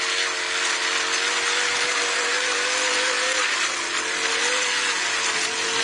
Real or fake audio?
real